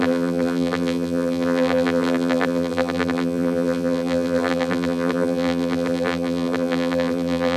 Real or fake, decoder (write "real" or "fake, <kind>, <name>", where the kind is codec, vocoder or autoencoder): fake, vocoder, BigVGAN v2